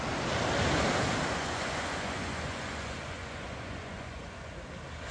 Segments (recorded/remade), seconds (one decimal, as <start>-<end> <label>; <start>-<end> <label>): 0.0-1.4 recorded; 1.4-4.5 remade; 4.5-5.1 recorded